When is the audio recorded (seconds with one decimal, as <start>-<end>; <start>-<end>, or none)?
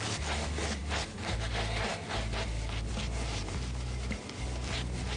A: 0.0-5.2